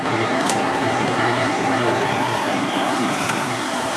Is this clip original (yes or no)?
no